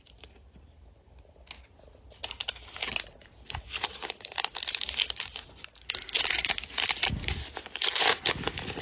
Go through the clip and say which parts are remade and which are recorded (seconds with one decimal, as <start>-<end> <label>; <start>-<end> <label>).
0.0-8.8 recorded